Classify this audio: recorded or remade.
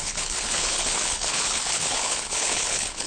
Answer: remade